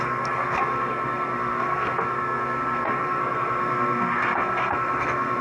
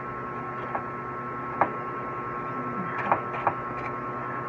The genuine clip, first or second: second